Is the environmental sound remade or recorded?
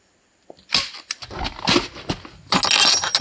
recorded